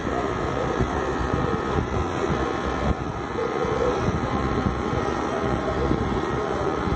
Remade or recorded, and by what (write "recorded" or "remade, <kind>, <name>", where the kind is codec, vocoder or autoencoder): remade, vocoder, Vocos